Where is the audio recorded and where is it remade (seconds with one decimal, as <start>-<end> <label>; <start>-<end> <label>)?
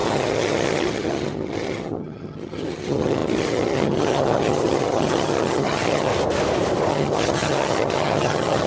0.0-6.1 remade; 6.1-6.9 recorded; 6.9-8.7 remade